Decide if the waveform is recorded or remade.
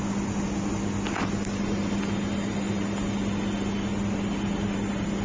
recorded